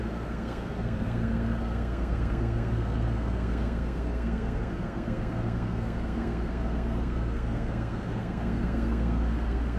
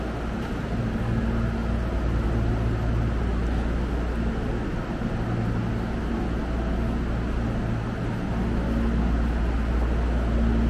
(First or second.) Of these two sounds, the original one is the second